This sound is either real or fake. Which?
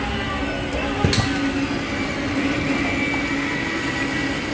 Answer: real